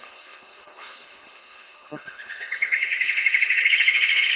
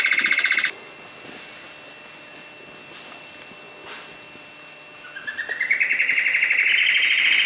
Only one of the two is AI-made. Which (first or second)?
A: first